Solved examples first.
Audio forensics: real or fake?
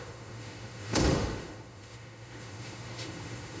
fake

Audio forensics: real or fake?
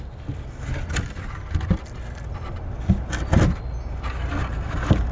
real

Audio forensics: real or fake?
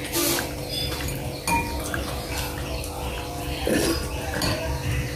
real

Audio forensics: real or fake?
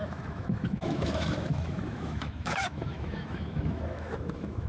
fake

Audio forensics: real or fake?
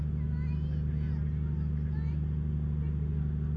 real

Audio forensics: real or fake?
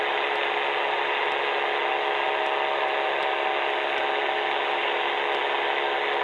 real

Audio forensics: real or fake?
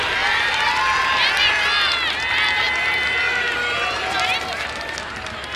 real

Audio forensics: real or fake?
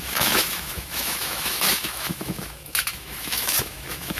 fake